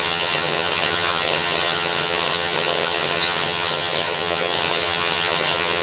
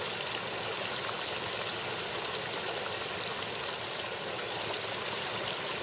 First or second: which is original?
second